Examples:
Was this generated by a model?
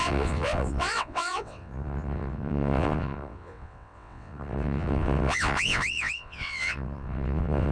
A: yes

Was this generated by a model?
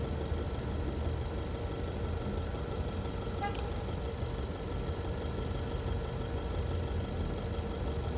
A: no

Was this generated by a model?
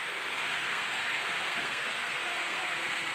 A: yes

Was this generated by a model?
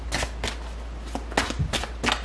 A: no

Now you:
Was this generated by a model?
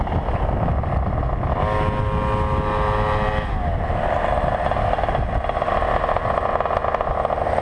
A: no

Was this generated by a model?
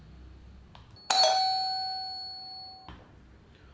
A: no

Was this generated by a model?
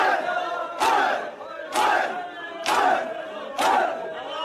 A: no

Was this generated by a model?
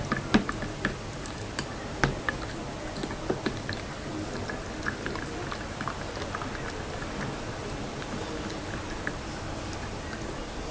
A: no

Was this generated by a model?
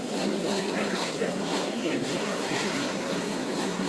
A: yes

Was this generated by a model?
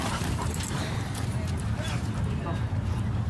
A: yes